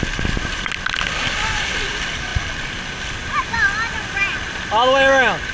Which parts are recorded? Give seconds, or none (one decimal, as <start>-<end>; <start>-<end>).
0.0-5.5